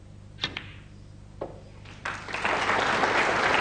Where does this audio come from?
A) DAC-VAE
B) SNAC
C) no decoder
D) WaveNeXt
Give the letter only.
C